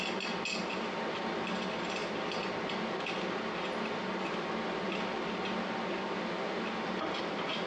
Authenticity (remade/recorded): recorded